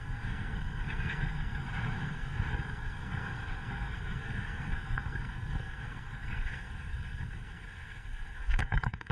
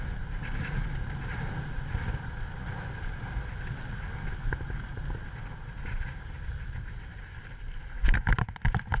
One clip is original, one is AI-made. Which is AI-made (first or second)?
first